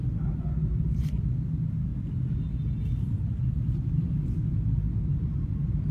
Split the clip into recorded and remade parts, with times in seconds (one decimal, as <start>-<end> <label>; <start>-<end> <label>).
0.0-5.9 recorded